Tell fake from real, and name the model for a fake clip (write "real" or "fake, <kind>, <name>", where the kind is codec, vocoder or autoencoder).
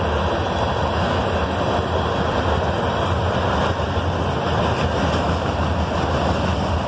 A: real